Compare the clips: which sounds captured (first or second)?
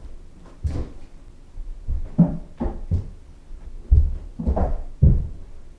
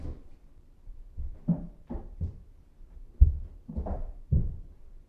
first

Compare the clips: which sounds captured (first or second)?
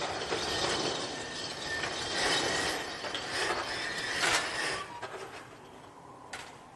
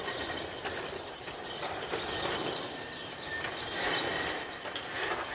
first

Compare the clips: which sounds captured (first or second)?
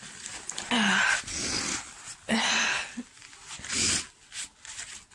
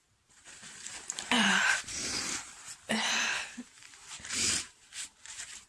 first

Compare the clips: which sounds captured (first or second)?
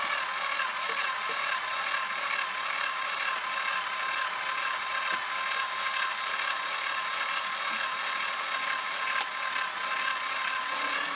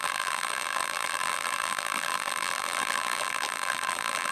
first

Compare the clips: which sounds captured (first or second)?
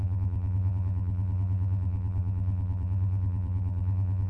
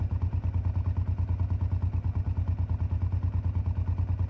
second